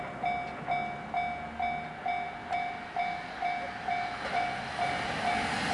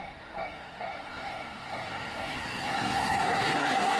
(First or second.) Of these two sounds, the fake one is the second